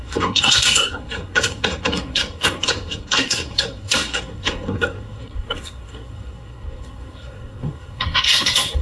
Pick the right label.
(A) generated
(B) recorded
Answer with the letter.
A